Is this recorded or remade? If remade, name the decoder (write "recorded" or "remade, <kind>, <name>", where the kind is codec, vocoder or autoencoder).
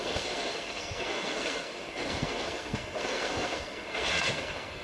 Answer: remade, codec, SNAC